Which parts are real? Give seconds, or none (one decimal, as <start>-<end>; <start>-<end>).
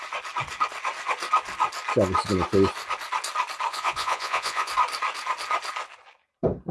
0.0-3.7; 4.7-6.7